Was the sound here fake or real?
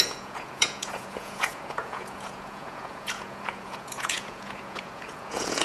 fake